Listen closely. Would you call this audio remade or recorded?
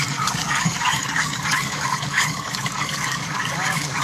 remade